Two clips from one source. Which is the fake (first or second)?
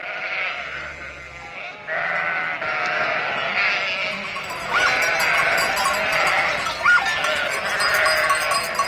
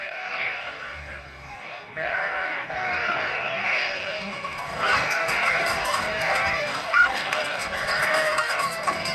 second